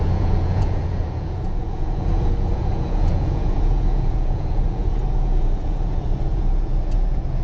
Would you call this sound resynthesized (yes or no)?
yes